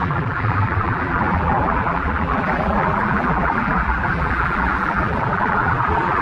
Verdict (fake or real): fake